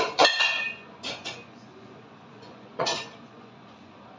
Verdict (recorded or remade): remade